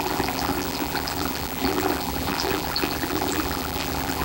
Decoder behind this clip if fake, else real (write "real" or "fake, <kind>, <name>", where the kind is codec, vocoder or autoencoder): fake, vocoder, BigVGAN v2